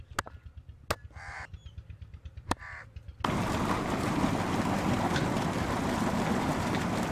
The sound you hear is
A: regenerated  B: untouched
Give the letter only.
B